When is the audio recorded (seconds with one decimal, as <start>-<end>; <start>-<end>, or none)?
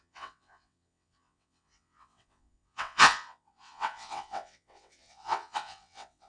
none